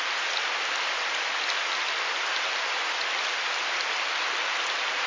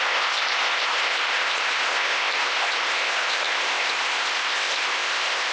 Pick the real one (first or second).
first